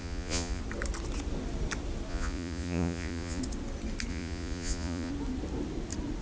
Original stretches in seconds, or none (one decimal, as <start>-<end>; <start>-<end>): 0.6-2.1; 3.4-4.1; 5.1-6.2